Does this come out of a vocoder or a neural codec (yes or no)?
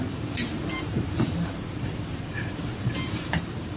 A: yes